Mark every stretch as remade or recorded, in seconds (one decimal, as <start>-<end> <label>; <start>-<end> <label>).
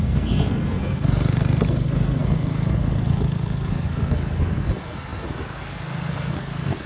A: 0.0-6.9 remade